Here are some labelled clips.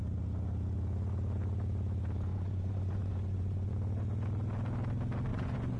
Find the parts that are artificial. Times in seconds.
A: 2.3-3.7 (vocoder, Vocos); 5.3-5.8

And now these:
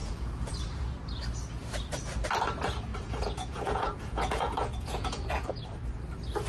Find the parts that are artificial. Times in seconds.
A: 0.0-0.5 (vocoder, Vocos); 2.9-5.5

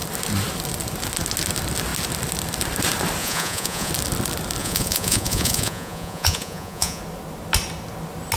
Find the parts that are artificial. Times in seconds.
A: 3.2-3.9 (vocoder, Vocos); 4.6-7.0